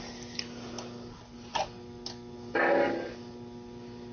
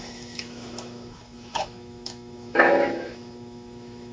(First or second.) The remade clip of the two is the second